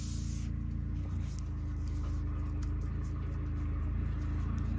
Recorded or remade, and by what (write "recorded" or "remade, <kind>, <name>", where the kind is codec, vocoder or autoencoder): recorded